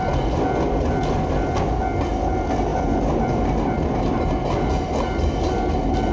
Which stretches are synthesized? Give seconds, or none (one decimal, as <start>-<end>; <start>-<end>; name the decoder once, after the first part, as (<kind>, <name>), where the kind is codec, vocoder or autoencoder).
none